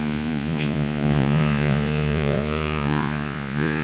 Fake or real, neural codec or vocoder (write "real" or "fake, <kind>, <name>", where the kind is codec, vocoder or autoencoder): fake, vocoder, Vocos